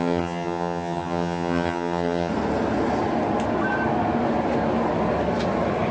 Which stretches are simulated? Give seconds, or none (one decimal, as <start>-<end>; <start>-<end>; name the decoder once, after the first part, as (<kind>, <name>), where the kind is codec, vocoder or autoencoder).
0.0-2.3 (vocoder, HiFi-GAN)